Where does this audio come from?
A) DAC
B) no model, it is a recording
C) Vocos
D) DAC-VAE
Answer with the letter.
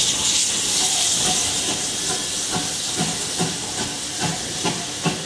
B